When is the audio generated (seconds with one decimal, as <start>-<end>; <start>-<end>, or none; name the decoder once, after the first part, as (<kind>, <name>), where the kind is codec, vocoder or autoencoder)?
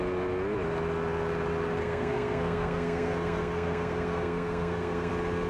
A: 1.8-5.1 (codec, SNAC)